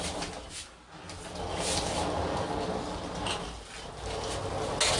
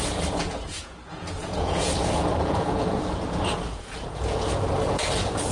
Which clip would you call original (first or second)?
first